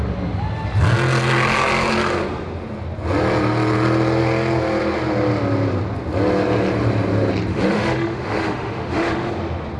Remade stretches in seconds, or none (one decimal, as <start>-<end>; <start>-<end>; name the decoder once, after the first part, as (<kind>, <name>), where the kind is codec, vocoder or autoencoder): 7.5-9.3 (autoencoder, DAC-VAE)